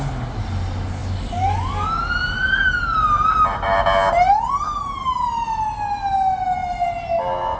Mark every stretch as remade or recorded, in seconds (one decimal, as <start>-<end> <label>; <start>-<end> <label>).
0.0-7.6 recorded

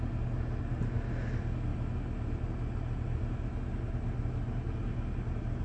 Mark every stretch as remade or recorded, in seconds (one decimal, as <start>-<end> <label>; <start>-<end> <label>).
0.0-5.6 recorded

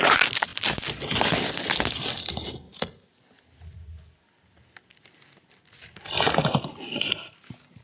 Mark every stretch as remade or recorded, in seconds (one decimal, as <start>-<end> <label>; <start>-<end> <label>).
0.0-7.8 recorded

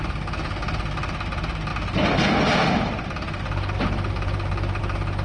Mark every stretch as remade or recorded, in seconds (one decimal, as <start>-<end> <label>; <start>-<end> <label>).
0.0-5.2 recorded